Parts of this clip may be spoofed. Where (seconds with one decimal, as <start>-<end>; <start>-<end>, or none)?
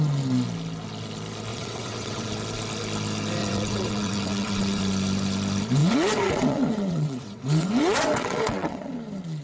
1.5-2.3; 3.4-4.8; 5.8-8.9